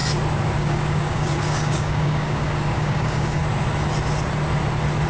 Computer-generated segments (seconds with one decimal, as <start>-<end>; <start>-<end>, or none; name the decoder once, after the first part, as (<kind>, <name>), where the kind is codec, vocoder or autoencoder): 0.6-3.4 (codec, DAC)

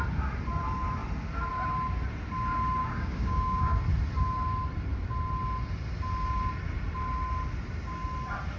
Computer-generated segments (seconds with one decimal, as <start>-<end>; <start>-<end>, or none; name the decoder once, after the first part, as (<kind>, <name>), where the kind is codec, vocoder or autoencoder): 2.8-3.8 (codec, DAC)

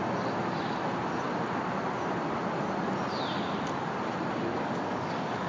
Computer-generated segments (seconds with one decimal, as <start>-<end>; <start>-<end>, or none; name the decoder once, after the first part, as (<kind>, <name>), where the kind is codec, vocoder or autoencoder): 4.5-5.5 (codec, DAC)

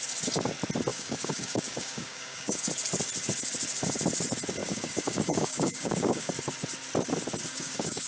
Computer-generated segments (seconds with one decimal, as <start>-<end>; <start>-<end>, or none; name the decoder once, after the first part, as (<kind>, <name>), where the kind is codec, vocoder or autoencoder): 0.9-2.6 (codec, DAC); 4.6-6.3; 7.5-8.1

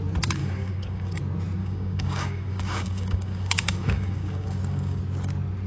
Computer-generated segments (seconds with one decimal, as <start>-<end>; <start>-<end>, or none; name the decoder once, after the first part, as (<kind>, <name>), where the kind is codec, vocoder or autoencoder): 0.4-1.2 (codec, DAC); 1.6-5.0

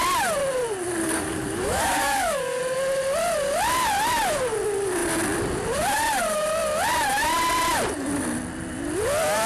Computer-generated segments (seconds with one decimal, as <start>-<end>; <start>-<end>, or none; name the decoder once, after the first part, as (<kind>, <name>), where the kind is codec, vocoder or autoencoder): 1.0-2.6 (codec, DAC)